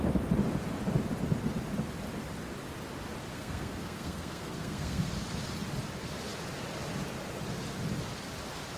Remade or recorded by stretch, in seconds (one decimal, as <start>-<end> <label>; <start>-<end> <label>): 0.0-3.3 recorded; 3.3-5.1 remade; 5.1-8.8 recorded